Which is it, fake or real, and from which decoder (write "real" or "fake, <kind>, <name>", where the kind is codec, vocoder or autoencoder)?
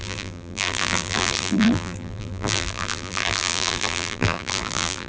fake, vocoder, BigVGAN v2